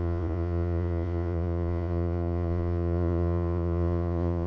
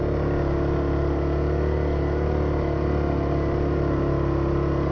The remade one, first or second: first